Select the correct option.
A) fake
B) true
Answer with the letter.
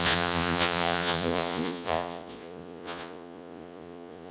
A